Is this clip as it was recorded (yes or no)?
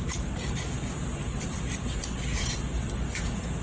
yes